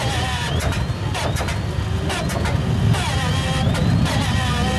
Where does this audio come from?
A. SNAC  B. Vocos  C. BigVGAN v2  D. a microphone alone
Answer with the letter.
D